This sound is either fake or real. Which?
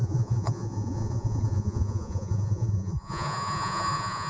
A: fake